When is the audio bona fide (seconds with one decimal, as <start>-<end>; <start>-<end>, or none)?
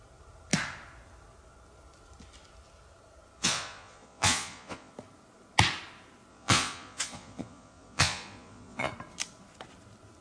0.0-3.4; 4.9-6.3; 8.9-10.2